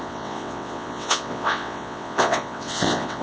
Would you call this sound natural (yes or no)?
no